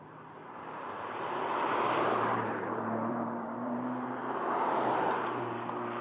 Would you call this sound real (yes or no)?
no